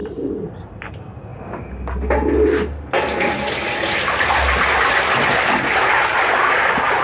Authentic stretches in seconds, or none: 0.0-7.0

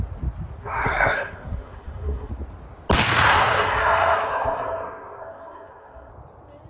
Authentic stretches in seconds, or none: 0.0-0.6; 2.3-3.3; 6.1-6.7

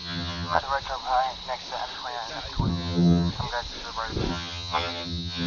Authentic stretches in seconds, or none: 0.6-2.7; 3.3-4.3

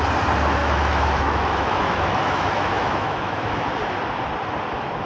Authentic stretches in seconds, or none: 0.0-0.6; 3.7-5.1

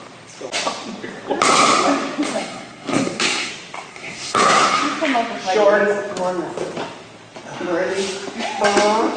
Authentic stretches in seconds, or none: 0.0-2.4; 3.5-3.9; 4.8-9.2

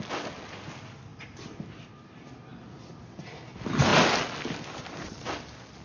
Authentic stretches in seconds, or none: 0.0-5.8

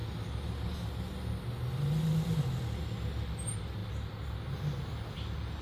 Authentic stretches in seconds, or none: 0.0-5.6

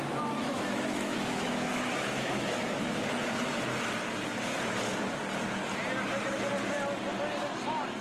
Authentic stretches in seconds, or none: 3.0-8.0